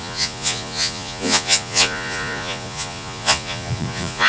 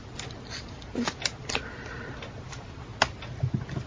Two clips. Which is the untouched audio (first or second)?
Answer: second